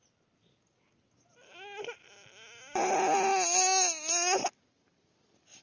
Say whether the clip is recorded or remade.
recorded